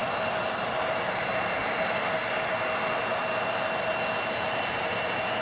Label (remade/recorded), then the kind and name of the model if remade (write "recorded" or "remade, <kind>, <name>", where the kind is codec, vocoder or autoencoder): recorded